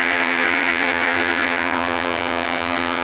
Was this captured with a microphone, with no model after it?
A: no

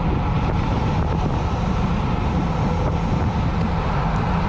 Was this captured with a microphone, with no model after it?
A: yes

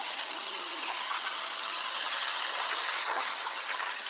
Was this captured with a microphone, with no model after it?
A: no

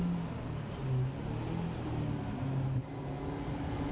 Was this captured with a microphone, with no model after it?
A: yes